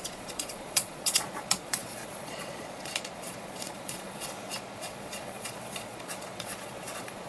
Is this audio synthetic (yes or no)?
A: yes